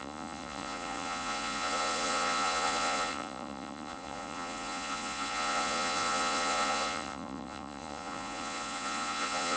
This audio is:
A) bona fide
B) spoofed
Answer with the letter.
B